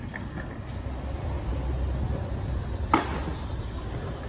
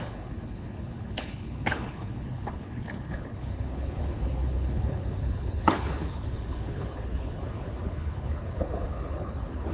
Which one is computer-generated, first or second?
second